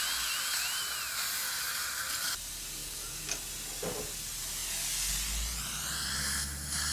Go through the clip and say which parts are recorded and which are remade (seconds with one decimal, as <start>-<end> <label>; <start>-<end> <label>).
0.0-2.8 recorded; 2.8-3.4 remade; 3.4-6.9 recorded